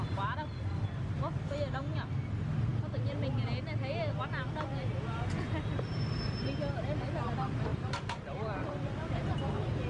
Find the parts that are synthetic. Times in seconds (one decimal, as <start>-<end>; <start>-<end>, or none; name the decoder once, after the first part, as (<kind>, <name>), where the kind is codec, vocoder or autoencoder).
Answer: 7.7-8.9 (vocoder, BigVGAN v2)